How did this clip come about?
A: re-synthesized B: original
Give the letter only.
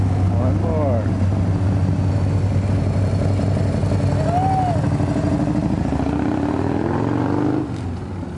B